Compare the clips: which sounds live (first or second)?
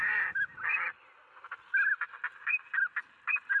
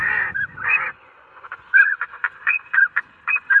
first